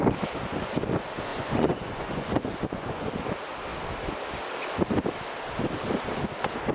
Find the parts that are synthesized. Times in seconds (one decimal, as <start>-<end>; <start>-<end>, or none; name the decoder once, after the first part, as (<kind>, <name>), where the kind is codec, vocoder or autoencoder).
1.3-3.1 (vocoder, Vocos)